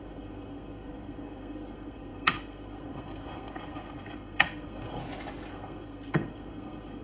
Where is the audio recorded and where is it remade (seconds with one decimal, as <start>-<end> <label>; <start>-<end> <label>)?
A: 0.0-5.0 remade; 5.0-5.5 recorded; 5.5-7.0 remade